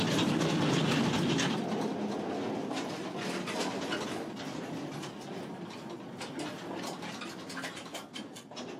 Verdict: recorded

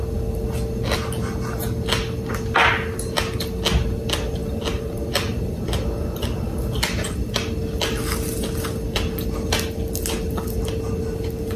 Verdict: recorded